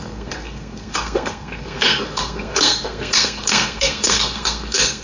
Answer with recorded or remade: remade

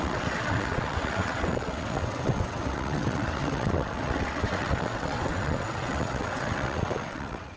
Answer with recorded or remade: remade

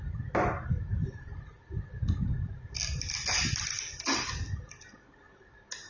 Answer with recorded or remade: recorded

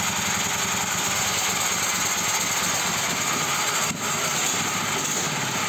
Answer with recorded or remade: recorded